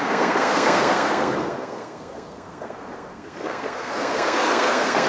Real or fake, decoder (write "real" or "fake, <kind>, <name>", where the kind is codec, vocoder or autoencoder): fake, codec, SNAC